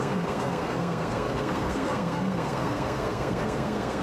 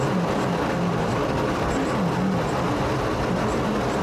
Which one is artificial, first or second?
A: first